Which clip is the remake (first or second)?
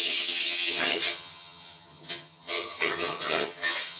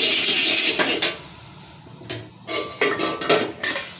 first